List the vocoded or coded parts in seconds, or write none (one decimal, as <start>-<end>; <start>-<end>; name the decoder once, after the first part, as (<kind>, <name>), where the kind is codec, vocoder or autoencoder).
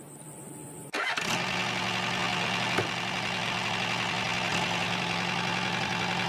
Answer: 2.3-3.7 (vocoder, BigVGAN v2)